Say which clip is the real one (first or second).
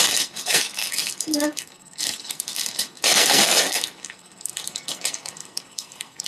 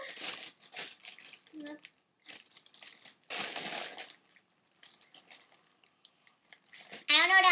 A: second